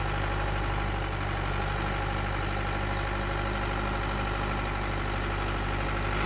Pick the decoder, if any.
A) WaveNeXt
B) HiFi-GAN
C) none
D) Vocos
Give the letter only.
C